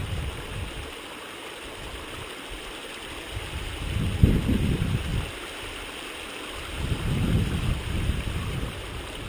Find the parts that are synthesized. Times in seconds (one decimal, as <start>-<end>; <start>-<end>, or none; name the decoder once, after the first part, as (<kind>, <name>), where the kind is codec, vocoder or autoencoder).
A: 4.5-5.1 (vocoder, BigVGAN v2); 7.7-9.3